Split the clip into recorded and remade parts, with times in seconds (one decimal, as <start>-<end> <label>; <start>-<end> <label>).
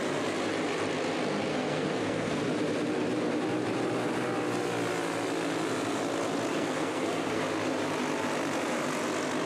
0.0-1.5 recorded; 1.5-2.4 remade; 2.4-6.5 recorded; 6.5-7.4 remade; 7.4-9.5 recorded